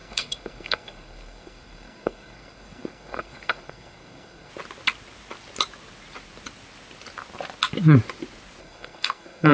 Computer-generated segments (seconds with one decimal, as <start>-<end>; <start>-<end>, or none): 0.0-4.5; 8.6-9.5